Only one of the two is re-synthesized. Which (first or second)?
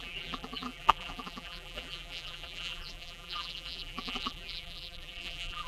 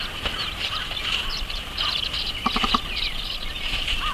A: first